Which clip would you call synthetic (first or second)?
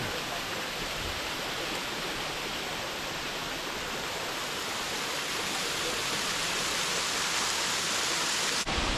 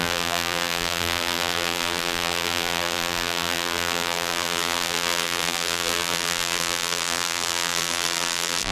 second